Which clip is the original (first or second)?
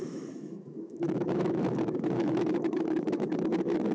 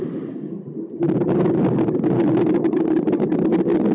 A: second